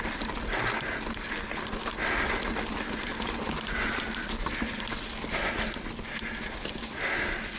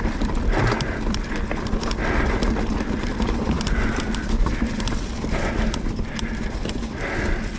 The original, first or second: first